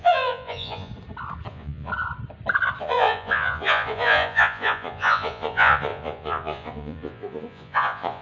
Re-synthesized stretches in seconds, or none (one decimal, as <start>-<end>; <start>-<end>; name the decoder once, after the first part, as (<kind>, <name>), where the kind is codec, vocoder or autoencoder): 0.0-0.9 (vocoder, Vocos); 1.5-1.9; 2.8-8.2